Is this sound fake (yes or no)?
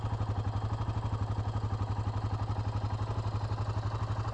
no